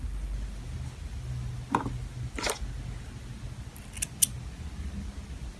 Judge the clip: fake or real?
real